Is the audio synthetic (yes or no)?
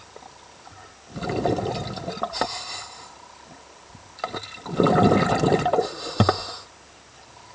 no